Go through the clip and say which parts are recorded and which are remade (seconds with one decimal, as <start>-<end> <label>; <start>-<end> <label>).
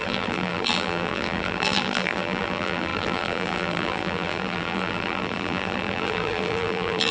0.0-7.1 remade